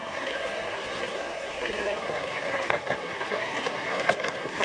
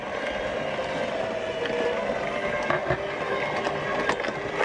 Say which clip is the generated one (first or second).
first